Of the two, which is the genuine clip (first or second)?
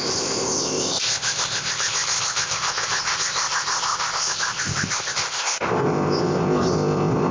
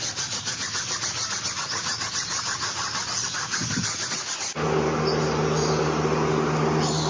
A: second